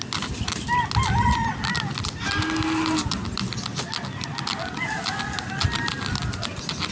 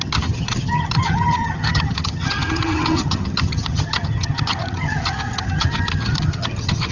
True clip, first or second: first